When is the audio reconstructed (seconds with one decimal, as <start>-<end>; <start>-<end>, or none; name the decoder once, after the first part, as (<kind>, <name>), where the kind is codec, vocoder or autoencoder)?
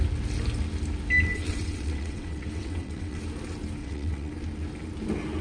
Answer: 1.3-3.2 (vocoder, WaveNeXt); 3.8-4.3